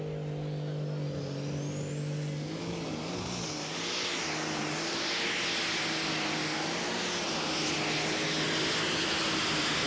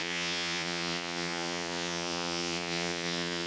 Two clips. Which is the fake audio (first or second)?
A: second